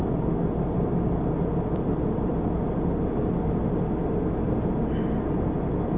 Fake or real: real